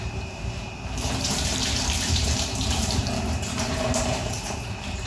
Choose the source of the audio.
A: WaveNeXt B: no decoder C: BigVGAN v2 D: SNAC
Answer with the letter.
C